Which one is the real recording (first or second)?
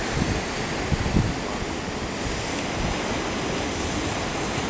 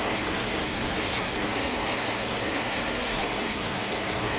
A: first